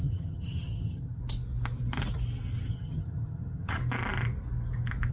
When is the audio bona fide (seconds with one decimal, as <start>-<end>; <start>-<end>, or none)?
1.2-2.7; 3.8-5.1